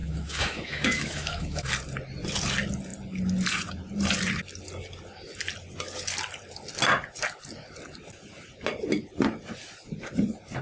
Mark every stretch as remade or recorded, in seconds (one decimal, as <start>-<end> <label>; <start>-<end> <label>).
0.0-1.7 remade; 1.7-10.6 recorded